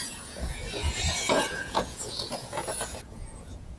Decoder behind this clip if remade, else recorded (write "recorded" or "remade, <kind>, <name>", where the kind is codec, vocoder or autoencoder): remade, vocoder, Vocos